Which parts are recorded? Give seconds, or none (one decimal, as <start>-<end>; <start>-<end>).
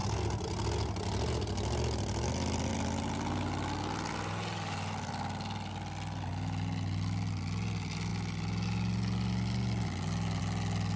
0.0-11.0